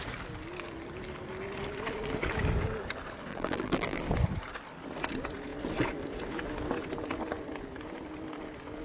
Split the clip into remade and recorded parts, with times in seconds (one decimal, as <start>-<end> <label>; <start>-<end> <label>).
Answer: 0.0-3.3 recorded; 3.3-4.0 remade; 4.0-8.8 recorded